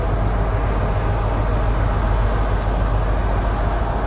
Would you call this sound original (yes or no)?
yes